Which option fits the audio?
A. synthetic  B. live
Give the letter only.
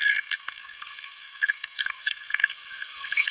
A